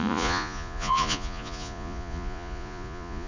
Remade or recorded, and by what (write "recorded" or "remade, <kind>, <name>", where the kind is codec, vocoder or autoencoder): remade, vocoder, Vocos